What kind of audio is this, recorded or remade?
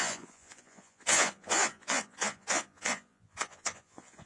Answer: remade